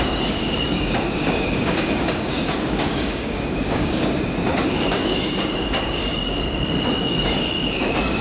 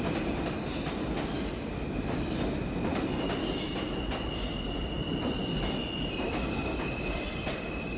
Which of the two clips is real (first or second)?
second